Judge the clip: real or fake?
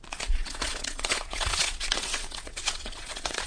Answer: fake